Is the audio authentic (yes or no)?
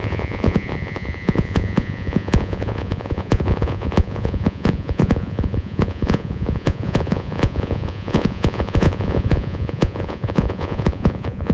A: no